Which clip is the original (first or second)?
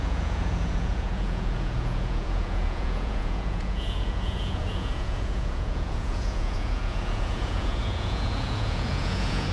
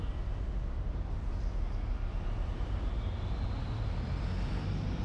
second